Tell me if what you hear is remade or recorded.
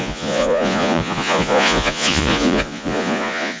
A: remade